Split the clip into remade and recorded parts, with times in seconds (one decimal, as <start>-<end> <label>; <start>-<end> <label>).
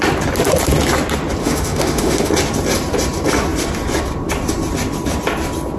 0.0-1.4 recorded; 1.4-2.3 remade; 2.3-5.8 recorded